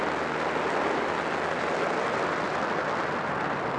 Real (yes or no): yes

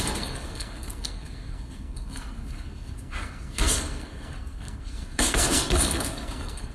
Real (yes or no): no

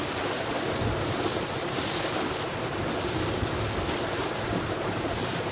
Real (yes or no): yes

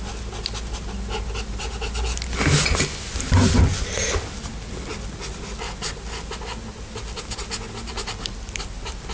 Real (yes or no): yes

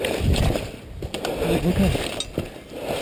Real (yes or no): yes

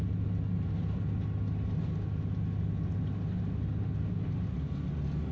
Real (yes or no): yes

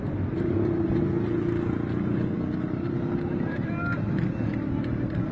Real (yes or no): yes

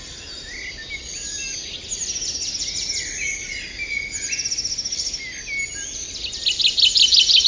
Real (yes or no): yes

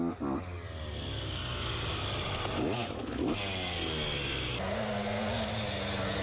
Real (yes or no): yes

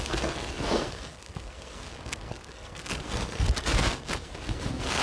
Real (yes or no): no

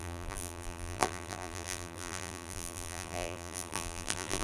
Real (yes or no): no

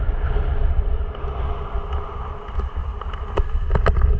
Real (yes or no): yes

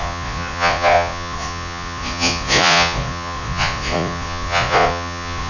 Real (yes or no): no